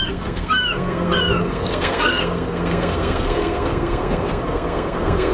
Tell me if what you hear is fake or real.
fake